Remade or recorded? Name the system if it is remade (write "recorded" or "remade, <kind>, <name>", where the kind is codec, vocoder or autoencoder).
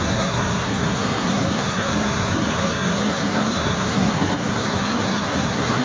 remade, codec, SNAC